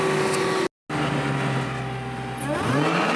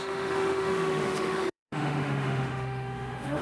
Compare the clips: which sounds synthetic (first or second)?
second